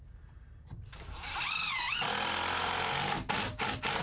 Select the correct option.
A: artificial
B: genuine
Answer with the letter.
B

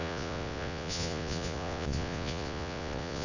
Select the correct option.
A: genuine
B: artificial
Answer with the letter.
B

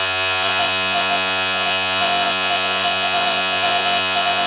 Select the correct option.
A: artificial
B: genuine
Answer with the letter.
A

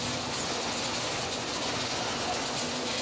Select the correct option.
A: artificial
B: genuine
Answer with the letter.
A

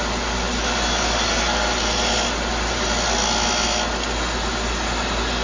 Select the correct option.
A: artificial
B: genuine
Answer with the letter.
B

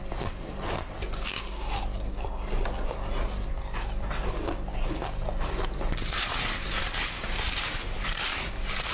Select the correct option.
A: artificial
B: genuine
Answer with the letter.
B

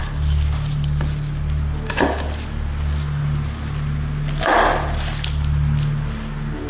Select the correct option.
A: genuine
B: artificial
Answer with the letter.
A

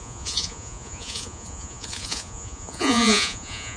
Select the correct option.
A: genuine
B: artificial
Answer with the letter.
B